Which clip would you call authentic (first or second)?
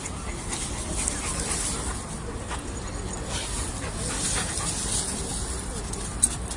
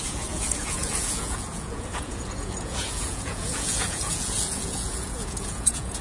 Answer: first